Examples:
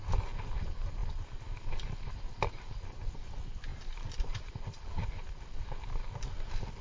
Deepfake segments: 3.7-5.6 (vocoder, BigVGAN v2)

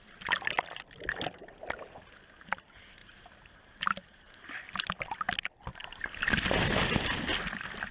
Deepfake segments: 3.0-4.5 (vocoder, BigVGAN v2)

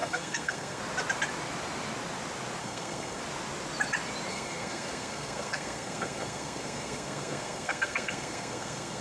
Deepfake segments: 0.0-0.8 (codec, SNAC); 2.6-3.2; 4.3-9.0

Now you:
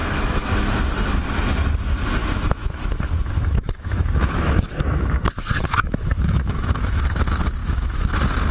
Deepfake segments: 0.0-0.8 (autoencoder, DAC-VAE); 2.2-7.0; 7.6-8.1